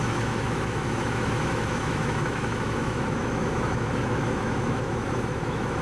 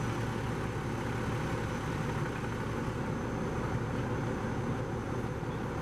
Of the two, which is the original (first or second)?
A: second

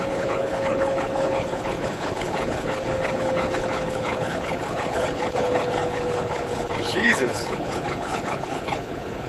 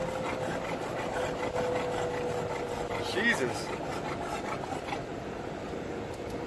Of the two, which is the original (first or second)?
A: second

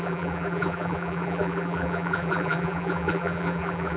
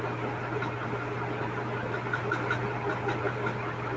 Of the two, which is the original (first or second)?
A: second